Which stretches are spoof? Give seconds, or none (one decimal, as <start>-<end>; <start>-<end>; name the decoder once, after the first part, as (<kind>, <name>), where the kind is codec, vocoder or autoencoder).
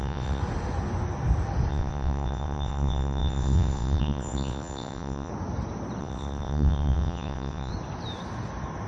0.0-0.4 (vocoder, WaveNeXt); 1.7-5.3; 6.0-7.7